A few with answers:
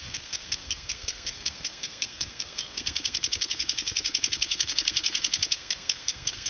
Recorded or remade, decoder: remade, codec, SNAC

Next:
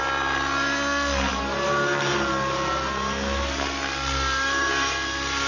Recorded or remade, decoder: recorded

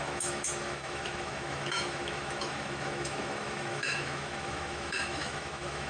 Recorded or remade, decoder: remade, autoencoder, DAC-VAE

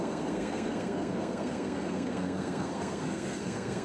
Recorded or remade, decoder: remade, codec, SNAC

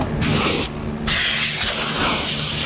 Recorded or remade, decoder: recorded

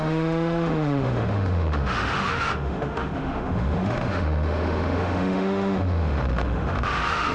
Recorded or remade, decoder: remade, autoencoder, DAC-VAE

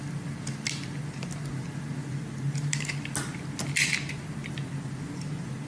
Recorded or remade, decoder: recorded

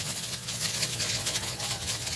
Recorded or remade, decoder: remade, vocoder, Vocos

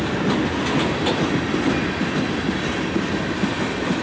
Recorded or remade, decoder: recorded